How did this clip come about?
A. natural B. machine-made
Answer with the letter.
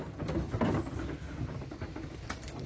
A